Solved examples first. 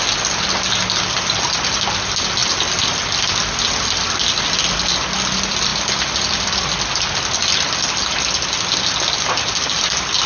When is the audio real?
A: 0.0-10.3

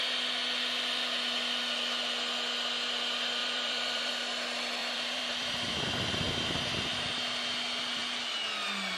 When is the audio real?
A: 0.0-3.4; 4.1-4.8; 6.2-9.0

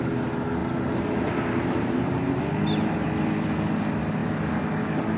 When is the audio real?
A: 0.0-0.6; 2.4-5.2

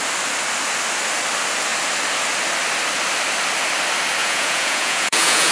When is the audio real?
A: 0.0-4.2

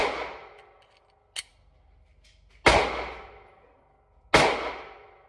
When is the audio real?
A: 0.0-5.3

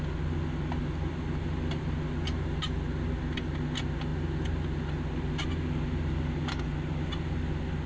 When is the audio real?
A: 0.0-7.9

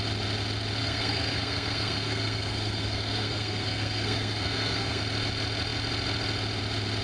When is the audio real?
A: 0.0-0.8; 5.0-7.0

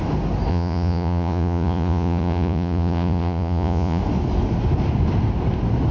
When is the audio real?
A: 0.0-0.5; 4.0-5.9